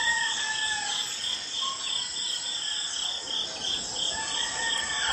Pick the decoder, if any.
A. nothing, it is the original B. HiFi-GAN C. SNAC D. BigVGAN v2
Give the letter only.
A